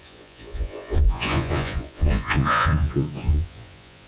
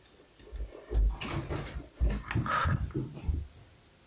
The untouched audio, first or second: second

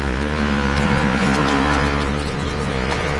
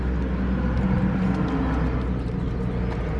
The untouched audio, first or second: second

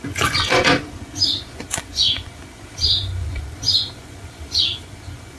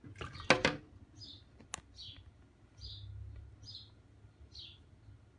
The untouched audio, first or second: second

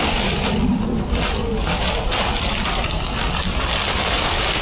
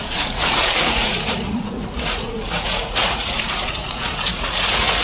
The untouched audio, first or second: first